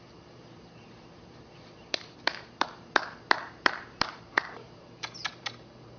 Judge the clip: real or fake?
fake